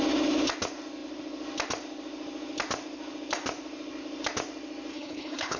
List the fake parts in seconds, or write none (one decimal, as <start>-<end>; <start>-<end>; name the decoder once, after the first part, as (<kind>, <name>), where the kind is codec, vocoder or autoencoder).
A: 4.9-5.6 (codec, HILCodec)